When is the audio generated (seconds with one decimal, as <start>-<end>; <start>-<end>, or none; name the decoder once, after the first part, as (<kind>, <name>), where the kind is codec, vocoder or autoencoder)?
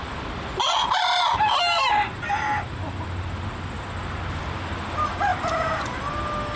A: none